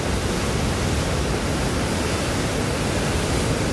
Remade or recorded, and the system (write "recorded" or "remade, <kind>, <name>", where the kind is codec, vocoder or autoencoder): recorded